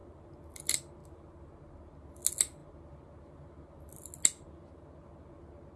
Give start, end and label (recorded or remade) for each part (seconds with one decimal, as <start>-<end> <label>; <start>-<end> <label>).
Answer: 0.0-0.5 remade; 0.5-1.0 recorded; 1.0-1.6 remade; 1.6-5.8 recorded